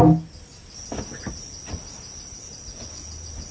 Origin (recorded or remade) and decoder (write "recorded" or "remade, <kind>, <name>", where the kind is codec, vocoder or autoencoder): recorded